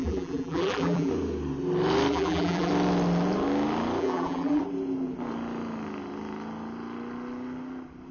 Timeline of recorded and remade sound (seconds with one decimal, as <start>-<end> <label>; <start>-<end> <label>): 0.0-1.1 remade; 1.1-2.1 recorded; 2.1-2.7 remade; 2.7-4.0 recorded; 4.0-4.6 remade; 4.6-8.1 recorded

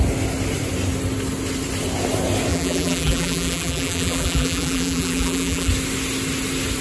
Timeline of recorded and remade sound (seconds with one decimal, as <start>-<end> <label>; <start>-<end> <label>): 0.0-2.5 recorded; 2.5-5.7 remade; 5.7-6.8 recorded

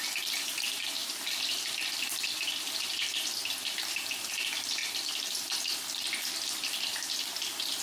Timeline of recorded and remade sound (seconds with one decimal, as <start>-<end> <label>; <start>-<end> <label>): 0.0-1.0 recorded; 1.0-4.3 remade; 4.3-4.8 recorded; 4.8-6.3 remade; 6.3-7.8 recorded

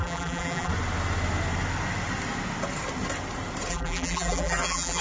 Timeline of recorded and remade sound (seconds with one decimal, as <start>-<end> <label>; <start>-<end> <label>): 0.0-0.7 remade; 0.7-3.7 recorded; 3.7-5.0 remade

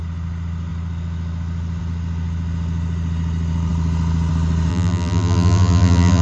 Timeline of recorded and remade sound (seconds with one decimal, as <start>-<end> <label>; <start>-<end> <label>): 0.0-4.7 recorded; 4.7-6.2 remade

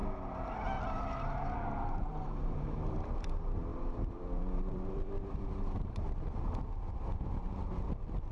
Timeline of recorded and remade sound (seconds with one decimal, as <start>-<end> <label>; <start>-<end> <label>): 0.0-2.1 recorded; 2.1-8.3 remade

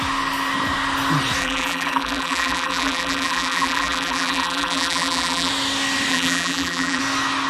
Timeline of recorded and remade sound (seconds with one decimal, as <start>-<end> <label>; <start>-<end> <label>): 0.0-1.4 recorded; 1.4-5.5 remade; 5.5-6.1 recorded; 6.1-7.0 remade; 7.0-7.5 recorded